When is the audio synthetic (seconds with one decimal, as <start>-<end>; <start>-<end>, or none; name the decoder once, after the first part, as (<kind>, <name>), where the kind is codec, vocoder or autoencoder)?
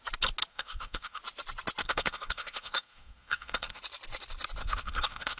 0.5-1.2 (codec, SNAC); 1.8-3.8; 4.6-5.4